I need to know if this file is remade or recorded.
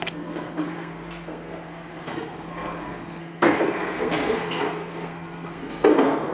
remade